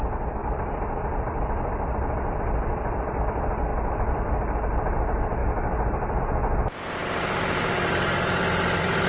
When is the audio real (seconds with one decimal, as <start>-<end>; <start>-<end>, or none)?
0.0-0.4; 3.2-3.7; 4.2-5.4; 6.2-7.0; 7.9-9.1